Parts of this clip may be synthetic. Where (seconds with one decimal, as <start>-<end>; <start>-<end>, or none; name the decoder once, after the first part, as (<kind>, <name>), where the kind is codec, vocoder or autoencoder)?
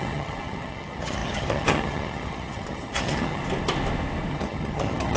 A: 0.0-3.4 (vocoder, HiFi-GAN); 4.3-5.2